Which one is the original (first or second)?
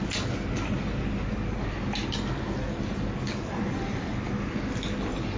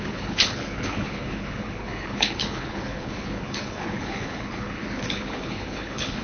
first